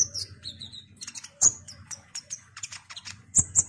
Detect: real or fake fake